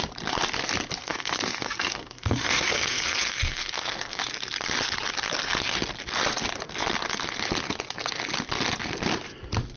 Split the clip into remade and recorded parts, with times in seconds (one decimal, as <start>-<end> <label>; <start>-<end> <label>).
0.0-1.0 recorded; 1.0-4.2 remade; 4.2-9.8 recorded